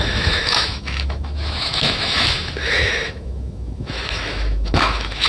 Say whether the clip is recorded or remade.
remade